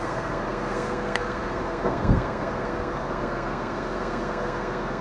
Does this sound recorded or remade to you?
remade